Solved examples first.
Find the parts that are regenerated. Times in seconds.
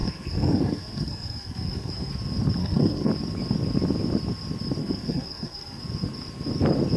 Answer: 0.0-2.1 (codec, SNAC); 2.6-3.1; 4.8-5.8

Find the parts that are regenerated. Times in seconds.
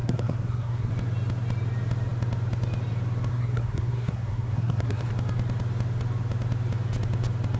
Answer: 0.0-0.9 (codec, SNAC); 3.3-5.1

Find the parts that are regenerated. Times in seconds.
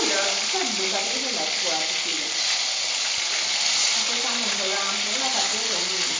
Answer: none